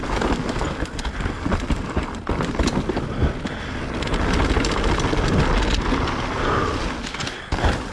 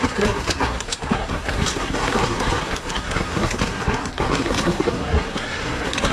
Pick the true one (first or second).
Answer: first